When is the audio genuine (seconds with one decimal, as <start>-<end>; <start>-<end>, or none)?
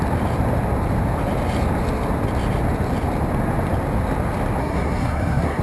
0.0-4.6